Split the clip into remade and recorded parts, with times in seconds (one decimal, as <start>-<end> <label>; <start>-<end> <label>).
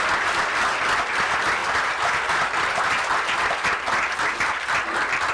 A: 0.0-5.3 recorded